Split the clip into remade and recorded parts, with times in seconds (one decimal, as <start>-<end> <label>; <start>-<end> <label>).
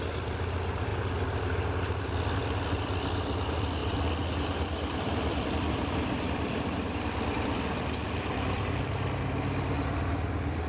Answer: 0.0-3.8 recorded; 3.8-8.8 remade; 8.8-10.7 recorded